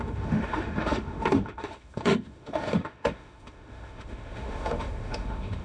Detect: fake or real fake